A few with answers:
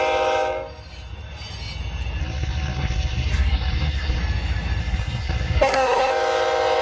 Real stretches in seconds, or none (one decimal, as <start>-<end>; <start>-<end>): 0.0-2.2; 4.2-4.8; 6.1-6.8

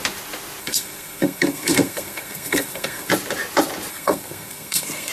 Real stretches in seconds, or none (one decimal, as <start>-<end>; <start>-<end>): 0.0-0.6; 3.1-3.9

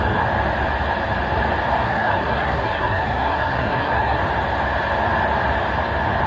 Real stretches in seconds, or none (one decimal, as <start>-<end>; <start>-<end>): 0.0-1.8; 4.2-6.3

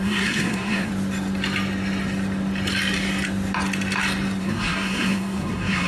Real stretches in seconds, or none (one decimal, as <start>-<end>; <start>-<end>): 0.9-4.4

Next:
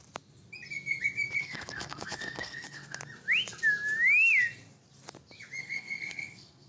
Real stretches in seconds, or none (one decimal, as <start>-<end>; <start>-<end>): 0.0-1.4; 3.0-5.6

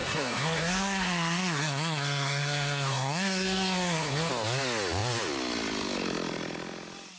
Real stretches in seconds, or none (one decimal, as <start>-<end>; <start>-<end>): 4.3-7.2

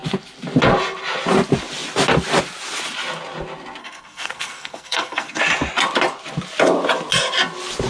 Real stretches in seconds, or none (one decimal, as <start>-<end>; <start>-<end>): 0.0-3.8; 5.4-7.9